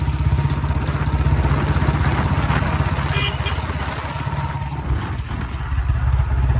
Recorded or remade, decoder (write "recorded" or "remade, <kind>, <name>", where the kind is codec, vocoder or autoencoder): recorded